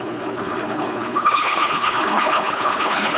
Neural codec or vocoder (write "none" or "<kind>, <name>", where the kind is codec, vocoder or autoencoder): codec, HILCodec